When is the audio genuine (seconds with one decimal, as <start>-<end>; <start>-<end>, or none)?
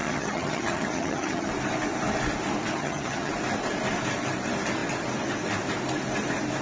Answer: 1.5-2.6; 3.3-6.6